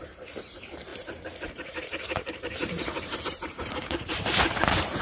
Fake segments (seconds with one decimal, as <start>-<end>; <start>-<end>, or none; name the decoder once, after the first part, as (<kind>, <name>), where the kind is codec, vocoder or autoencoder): 0.0-5.0 (vocoder, BigVGAN v2)